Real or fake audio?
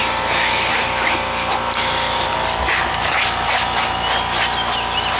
real